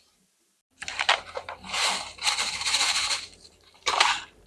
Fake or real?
fake